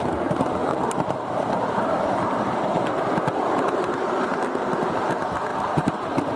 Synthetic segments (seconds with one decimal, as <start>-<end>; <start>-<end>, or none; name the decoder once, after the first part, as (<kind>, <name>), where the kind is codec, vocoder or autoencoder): 0.6-2.8 (vocoder, BigVGAN v2); 5.5-6.4